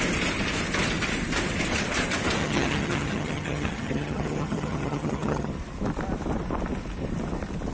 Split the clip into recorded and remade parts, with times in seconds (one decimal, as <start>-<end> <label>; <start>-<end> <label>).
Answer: 0.0-2.4 recorded; 2.4-5.5 remade; 5.5-7.7 recorded